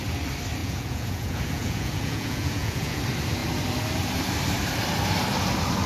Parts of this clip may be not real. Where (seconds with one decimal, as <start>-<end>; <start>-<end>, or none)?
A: 0.6-3.0